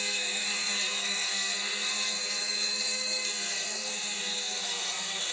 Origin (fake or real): fake